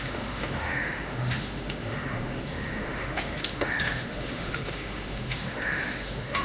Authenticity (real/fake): fake